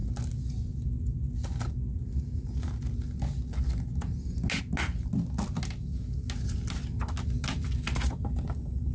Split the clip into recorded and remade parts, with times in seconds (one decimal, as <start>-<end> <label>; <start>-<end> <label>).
0.0-8.9 recorded